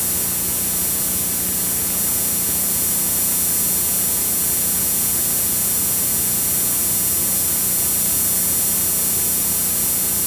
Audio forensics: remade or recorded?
recorded